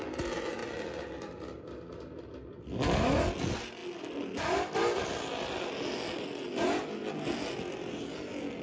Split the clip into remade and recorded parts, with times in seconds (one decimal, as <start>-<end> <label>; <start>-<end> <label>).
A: 0.0-8.6 recorded